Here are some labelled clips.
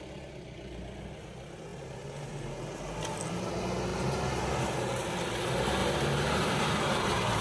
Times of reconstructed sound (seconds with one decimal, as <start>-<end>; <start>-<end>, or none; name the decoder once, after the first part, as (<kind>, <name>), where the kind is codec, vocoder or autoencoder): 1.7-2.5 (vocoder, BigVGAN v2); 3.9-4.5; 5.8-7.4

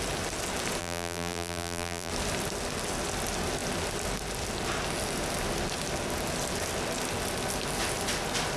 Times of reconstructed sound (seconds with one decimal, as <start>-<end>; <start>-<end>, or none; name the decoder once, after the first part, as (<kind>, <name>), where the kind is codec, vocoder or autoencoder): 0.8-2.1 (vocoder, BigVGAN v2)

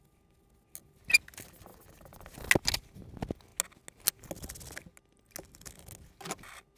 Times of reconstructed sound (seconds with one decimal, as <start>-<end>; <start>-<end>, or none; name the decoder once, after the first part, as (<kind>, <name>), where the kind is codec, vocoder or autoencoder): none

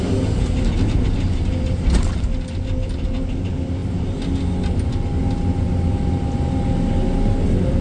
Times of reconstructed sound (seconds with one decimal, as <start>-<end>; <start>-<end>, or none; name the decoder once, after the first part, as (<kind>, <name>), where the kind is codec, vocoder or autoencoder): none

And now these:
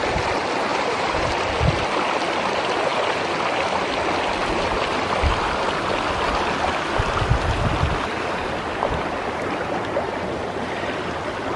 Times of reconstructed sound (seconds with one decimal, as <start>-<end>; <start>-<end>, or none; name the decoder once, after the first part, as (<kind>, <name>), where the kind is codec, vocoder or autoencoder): 0.7-1.3 (vocoder, BigVGAN v2)

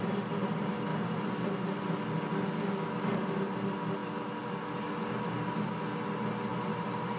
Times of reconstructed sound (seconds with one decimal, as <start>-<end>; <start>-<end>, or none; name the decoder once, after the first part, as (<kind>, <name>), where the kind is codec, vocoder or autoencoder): 0.9-1.5 (vocoder, BigVGAN v2); 6.5-7.2

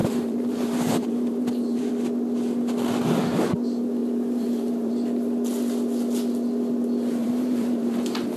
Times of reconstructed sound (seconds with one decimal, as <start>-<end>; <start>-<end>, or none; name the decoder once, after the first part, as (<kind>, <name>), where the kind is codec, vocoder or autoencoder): 0.0-1.9 (vocoder, BigVGAN v2); 4.0-4.9; 7.2-8.0

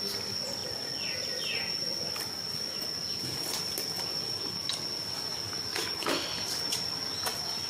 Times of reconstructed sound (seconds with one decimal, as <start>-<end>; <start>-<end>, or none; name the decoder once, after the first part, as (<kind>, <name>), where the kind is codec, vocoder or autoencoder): none